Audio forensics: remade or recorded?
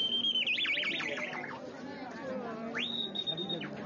recorded